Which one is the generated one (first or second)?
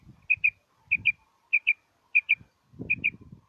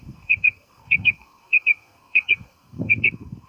second